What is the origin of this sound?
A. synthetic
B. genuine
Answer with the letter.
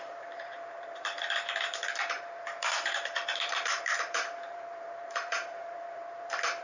A